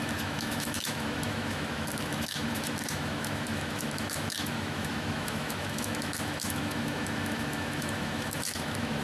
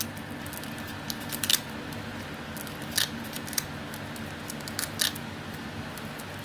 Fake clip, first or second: first